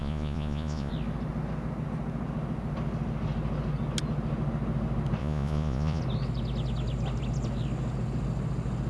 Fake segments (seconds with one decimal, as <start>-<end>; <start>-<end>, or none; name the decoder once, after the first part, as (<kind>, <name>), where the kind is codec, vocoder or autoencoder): 0.0-0.9 (vocoder, Vocos); 5.2-6.0